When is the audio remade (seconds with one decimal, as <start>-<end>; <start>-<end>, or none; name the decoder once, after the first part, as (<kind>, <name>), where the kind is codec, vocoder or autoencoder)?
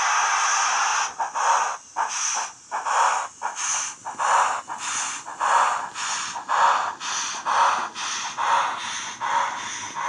4.9-6.5 (vocoder, Vocos)